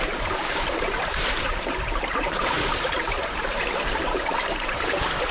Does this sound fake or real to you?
fake